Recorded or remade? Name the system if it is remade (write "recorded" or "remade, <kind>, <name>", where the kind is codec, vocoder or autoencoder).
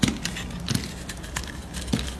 recorded